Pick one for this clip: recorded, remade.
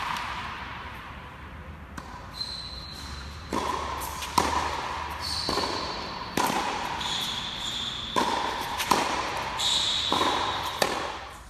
remade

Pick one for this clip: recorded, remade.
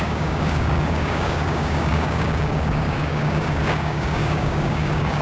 remade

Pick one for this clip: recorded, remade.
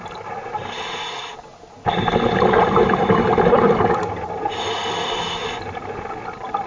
recorded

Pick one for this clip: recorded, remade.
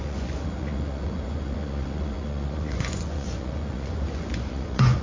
remade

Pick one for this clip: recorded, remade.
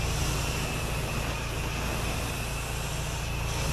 recorded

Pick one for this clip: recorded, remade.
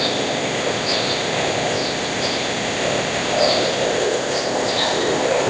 remade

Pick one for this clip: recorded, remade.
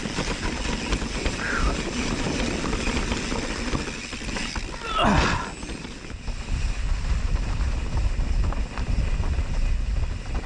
recorded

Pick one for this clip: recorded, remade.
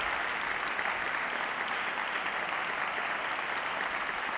recorded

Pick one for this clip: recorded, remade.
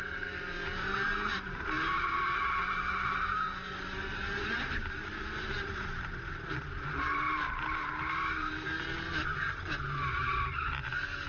remade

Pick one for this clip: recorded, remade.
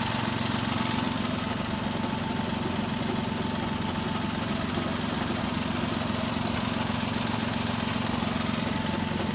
recorded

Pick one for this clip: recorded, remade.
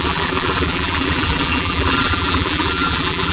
remade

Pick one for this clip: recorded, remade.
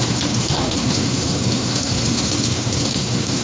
remade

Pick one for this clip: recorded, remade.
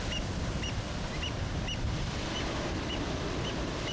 remade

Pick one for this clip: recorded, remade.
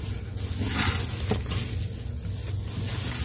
recorded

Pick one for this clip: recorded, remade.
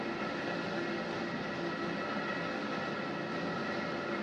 recorded